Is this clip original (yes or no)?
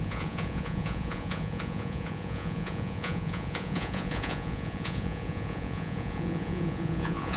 no